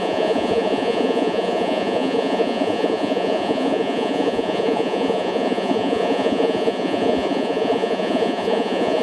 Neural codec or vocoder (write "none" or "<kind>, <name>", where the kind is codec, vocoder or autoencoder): vocoder, Vocos